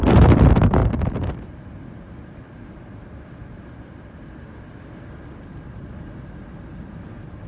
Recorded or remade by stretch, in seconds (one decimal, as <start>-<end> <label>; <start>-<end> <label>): 0.0-7.5 remade